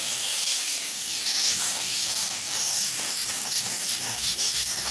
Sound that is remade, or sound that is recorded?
remade